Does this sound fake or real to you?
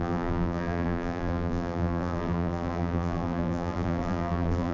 fake